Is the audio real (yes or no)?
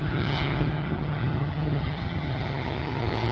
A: no